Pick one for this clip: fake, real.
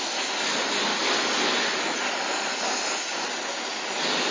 real